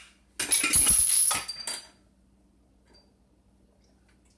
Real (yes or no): yes